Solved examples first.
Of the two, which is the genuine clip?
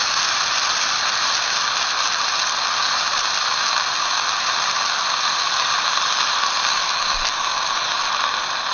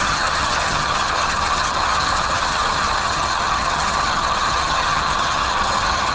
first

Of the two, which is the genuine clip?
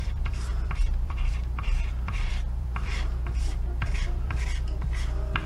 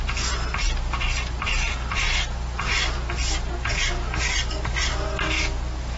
second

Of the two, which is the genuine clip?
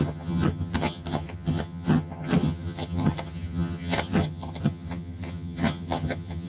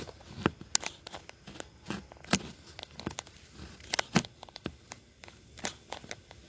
second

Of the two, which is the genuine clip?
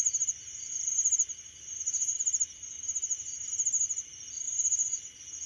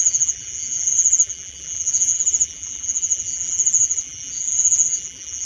first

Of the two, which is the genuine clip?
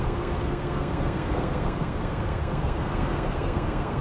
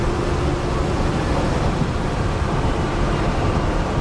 second